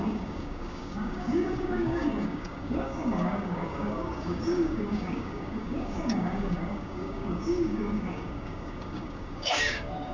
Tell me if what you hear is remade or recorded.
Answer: remade